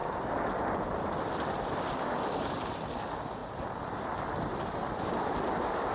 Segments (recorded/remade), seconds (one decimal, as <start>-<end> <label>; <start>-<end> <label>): 0.0-2.9 remade; 2.9-3.4 recorded; 3.4-4.6 remade; 4.6-5.9 recorded